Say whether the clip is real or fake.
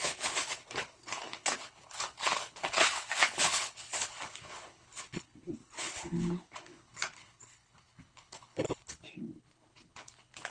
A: fake